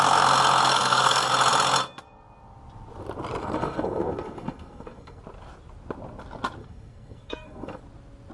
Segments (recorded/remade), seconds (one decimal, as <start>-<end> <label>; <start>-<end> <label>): 0.0-0.7 recorded; 0.7-1.3 remade; 1.3-3.4 recorded; 3.4-5.2 remade; 5.2-6.6 recorded; 6.6-7.8 remade; 7.8-8.3 recorded